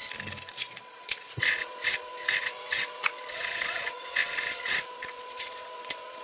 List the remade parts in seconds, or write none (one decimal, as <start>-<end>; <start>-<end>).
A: 0.5-6.2